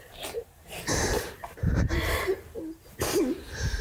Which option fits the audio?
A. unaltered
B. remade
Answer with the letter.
B